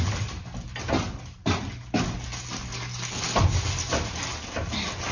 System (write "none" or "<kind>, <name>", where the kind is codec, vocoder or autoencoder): none